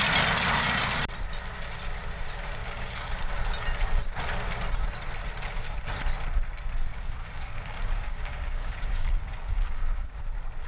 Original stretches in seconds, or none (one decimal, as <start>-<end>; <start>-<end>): 0.0-2.6; 3.3-6.9; 10.2-10.7